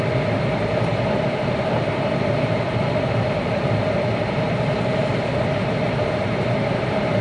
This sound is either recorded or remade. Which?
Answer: remade